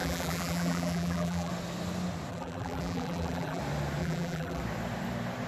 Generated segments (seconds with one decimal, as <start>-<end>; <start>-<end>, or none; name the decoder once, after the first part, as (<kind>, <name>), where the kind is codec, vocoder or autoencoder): 0.0-1.5 (vocoder, BigVGAN v2); 2.3-3.6; 4.0-4.6